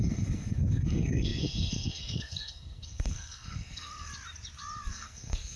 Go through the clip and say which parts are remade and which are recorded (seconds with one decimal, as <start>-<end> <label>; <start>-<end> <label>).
0.0-4.1 remade; 4.1-4.9 recorded; 4.9-5.6 remade